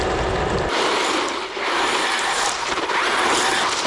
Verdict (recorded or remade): recorded